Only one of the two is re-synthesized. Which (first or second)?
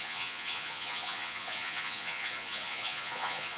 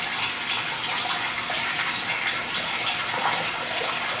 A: first